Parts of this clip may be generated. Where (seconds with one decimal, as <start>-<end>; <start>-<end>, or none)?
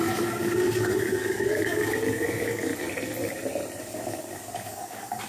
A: 0.0-2.7; 3.8-5.3